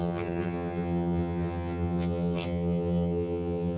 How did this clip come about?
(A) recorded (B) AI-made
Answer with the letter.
B